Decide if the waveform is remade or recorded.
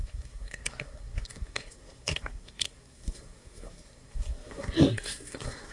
remade